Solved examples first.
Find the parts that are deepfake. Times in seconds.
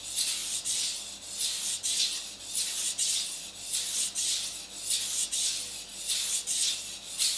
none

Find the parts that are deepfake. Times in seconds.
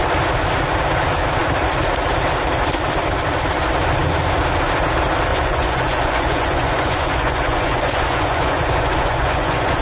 5.3-9.8 (vocoder, Vocos)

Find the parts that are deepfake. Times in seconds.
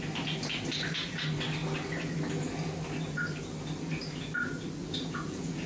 4.8-5.7 (vocoder, Vocos)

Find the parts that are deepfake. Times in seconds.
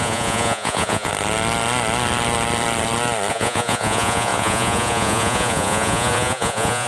0.0-1.1 (vocoder, Vocos); 3.3-6.9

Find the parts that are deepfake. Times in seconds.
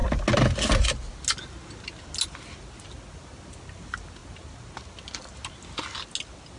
none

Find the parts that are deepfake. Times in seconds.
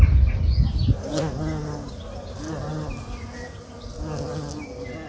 none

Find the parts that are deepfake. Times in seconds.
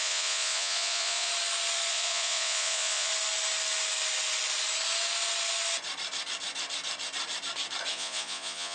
0.0-1.3 (vocoder, Vocos); 1.9-3.1; 7.9-8.7